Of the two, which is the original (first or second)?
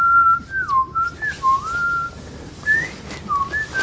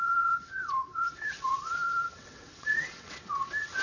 first